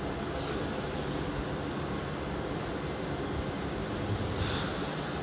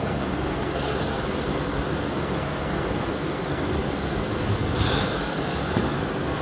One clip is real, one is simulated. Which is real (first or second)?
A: first